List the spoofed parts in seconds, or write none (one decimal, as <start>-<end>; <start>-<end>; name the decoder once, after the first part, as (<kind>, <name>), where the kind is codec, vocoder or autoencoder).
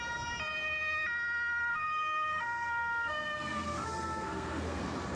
1.7-4.8 (codec, SNAC)